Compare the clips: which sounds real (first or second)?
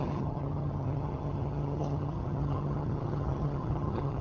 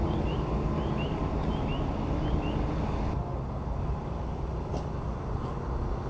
second